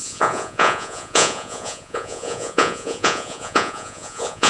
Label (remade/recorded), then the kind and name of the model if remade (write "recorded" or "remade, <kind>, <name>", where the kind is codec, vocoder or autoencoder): remade, vocoder, Vocos